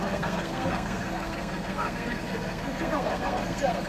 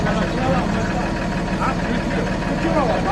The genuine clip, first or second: second